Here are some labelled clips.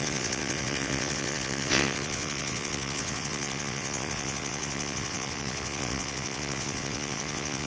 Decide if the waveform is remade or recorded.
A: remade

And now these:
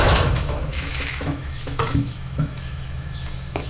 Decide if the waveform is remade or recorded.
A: remade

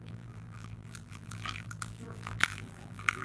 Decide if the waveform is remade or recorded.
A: remade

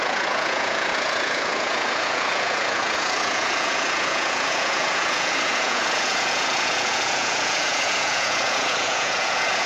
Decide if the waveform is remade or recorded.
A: remade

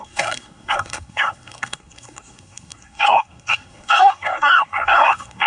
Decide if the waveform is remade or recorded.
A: remade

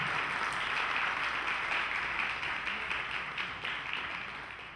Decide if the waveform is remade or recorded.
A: recorded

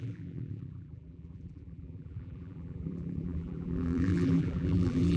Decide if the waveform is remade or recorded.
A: remade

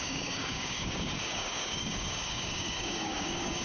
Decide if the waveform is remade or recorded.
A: remade